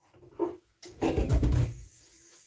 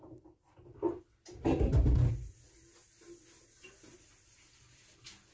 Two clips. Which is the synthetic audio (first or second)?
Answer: first